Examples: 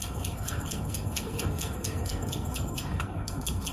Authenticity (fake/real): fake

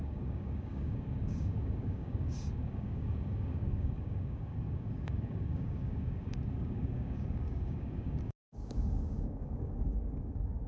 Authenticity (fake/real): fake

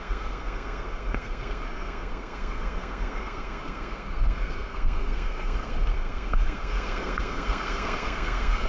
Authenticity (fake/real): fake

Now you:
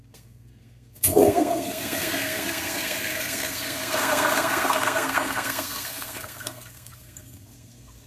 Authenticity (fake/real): fake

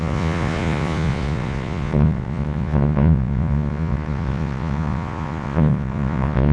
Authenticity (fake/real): fake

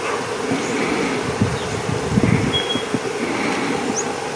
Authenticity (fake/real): real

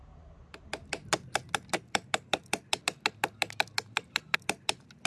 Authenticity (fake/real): real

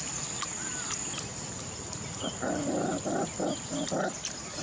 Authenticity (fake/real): real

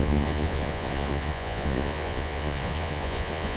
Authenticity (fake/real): fake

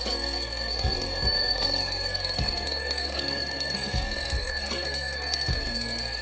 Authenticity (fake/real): fake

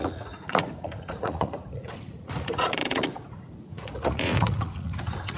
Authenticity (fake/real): fake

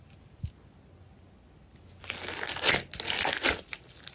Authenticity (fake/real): real